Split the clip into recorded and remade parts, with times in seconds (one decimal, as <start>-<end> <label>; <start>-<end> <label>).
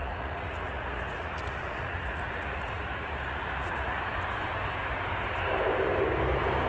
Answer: 0.0-4.0 remade; 4.0-6.7 recorded